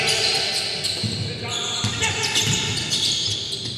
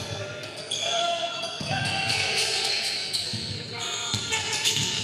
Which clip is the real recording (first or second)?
first